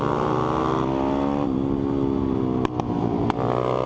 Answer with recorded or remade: recorded